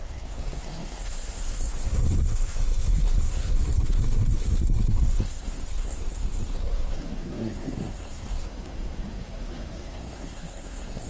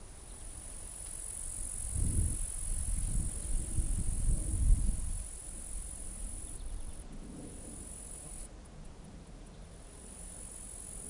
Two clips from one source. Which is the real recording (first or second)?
second